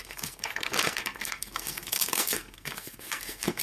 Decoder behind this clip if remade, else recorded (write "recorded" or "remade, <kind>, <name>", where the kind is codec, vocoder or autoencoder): remade, codec, SNAC